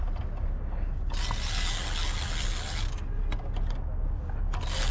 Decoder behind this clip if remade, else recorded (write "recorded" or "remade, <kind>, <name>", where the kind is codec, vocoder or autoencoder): recorded